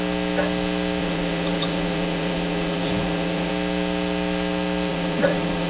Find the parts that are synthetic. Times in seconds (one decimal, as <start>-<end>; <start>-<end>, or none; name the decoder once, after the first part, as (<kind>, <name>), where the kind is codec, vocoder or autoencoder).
1.0-3.5 (vocoder, Vocos); 4.9-5.7

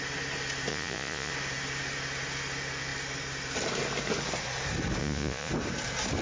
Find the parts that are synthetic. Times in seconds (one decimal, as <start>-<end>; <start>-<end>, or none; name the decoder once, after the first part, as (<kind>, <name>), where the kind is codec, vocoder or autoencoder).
0.7-1.3 (vocoder, Vocos); 5.0-5.5

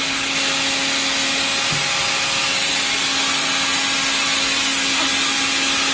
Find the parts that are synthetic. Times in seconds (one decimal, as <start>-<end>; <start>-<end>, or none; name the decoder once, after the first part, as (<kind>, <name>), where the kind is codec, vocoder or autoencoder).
none

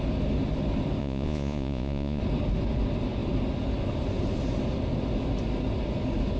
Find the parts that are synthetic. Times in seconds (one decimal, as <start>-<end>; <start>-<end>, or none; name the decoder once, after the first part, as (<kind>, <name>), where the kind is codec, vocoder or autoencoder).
1.0-2.2 (vocoder, Vocos)

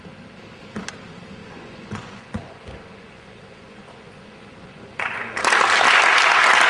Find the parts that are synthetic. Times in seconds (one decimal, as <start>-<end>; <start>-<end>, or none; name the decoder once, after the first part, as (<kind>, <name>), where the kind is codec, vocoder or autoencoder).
1.4-5.4 (vocoder, Vocos)

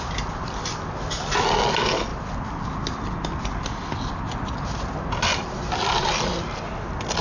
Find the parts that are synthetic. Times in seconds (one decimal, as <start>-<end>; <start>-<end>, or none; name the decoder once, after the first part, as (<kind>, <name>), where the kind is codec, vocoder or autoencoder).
none

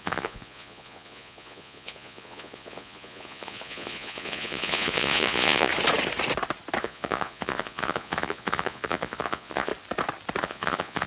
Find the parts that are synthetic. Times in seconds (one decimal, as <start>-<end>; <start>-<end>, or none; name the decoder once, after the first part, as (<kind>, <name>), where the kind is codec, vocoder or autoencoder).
0.0-5.7 (vocoder, Vocos); 6.8-9.7; 10.4-11.1

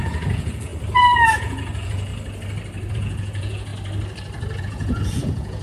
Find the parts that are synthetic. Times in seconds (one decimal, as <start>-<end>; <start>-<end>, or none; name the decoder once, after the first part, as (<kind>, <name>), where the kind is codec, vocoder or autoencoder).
0.0-0.7 (vocoder, Vocos); 1.4-2.1; 2.9-3.7; 4.6-5.6